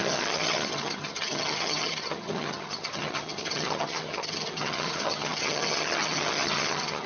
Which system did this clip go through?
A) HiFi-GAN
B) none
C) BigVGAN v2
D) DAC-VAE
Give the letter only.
A